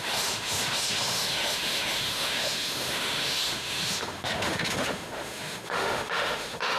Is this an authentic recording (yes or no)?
no